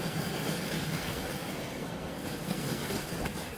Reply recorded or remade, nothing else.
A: remade